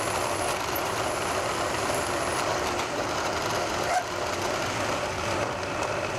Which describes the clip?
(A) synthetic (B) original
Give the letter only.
A